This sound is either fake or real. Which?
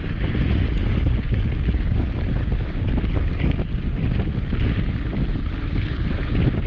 real